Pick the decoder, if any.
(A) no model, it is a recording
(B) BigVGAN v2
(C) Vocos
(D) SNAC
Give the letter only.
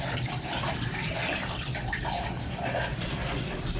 B